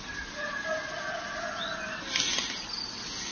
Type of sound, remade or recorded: recorded